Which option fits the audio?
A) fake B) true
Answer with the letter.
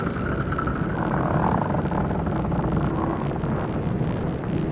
B